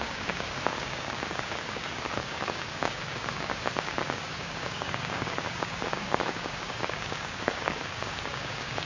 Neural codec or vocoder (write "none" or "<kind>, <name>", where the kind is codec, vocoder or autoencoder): codec, DAC